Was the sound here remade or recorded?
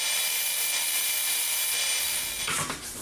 remade